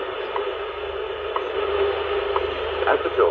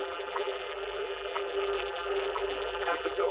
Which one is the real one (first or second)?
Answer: first